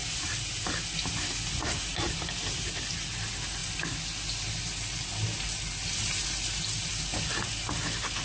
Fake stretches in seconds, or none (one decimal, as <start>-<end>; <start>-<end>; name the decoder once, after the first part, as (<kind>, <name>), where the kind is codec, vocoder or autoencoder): none